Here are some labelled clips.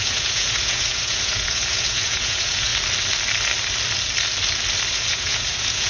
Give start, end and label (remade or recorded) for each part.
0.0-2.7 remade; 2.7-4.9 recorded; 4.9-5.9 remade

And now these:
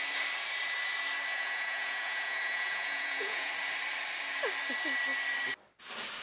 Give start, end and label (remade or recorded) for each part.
0.0-1.3 recorded; 1.3-3.5 remade; 3.5-6.2 recorded